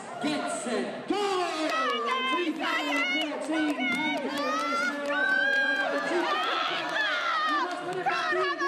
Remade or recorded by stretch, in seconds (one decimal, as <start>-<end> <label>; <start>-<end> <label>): 0.0-5.2 recorded; 5.2-6.1 remade; 6.1-8.7 recorded